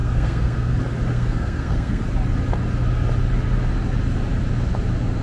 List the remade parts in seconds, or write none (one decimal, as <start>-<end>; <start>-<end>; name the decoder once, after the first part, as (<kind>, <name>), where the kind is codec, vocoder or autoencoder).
0.0-0.7 (codec, SNAC); 1.1-2.0